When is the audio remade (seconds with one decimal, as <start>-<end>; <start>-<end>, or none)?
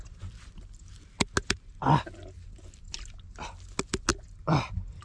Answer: 4.1-5.0